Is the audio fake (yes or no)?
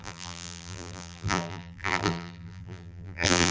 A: yes